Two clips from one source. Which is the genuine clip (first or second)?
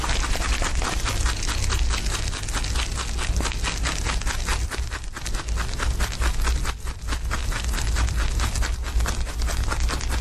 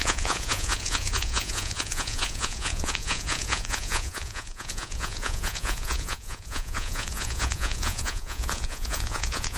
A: first